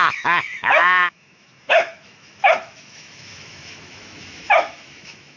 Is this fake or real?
fake